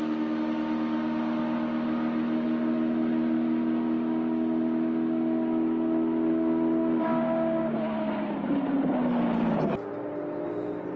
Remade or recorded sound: recorded